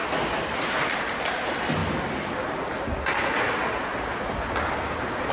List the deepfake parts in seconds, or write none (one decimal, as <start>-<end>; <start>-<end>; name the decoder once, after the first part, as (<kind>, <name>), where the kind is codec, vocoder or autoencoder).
none